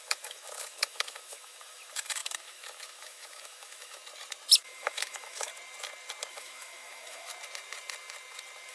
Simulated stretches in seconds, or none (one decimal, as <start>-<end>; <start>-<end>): 0.0-4.0; 4.6-5.5; 6.3-7.3